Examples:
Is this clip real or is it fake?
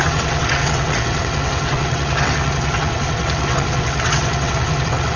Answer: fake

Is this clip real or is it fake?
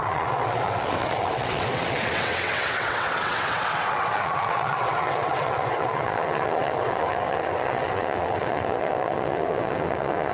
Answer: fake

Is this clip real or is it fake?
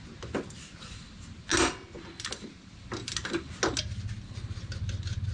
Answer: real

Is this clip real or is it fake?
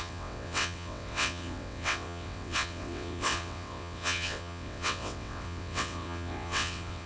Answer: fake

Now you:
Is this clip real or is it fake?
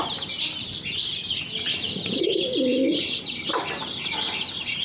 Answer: real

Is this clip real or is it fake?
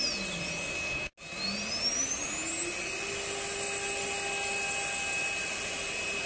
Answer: real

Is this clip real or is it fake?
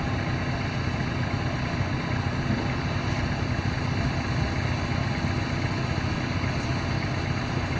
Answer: real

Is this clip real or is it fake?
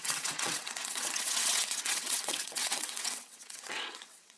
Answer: fake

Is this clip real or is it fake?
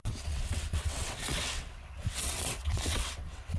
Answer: fake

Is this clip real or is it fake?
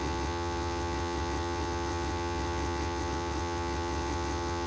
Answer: fake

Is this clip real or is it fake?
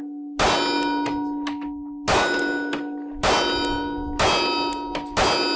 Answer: real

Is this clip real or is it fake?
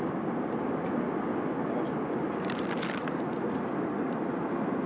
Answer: real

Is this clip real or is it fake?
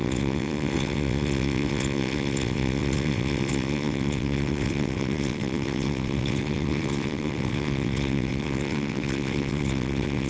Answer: fake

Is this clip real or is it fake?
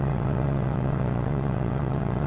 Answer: fake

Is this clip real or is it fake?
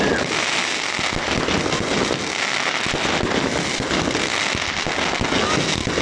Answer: real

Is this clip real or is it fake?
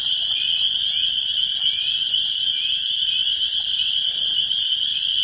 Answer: real